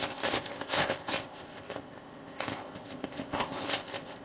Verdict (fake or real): fake